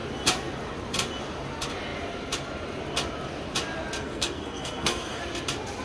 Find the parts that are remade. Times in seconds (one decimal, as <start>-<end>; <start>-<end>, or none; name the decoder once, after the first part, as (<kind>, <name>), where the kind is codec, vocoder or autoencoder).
4.0-5.2 (codec, SNAC)